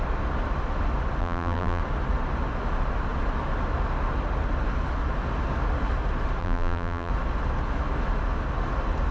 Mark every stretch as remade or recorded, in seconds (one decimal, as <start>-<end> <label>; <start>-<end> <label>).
0.0-1.2 recorded; 1.2-1.8 remade; 1.8-6.4 recorded; 6.4-7.1 remade; 7.1-9.1 recorded